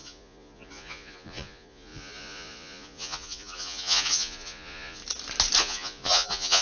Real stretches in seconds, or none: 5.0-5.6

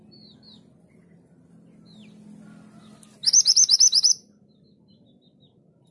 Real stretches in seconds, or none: none

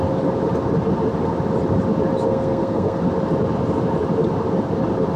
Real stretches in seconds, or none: 0.0-2.3; 3.0-5.2

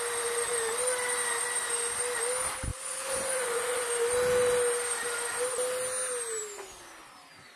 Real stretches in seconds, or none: 0.0-2.7; 3.8-7.6

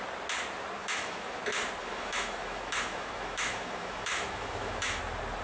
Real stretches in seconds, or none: 0.0-0.8; 1.4-1.8; 5.0-5.4

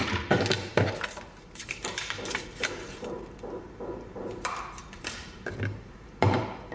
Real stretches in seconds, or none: none

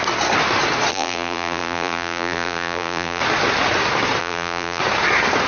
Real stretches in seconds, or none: 0.0-0.9; 3.2-4.2; 4.8-5.5